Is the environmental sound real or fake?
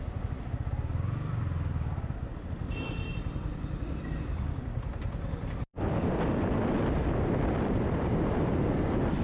fake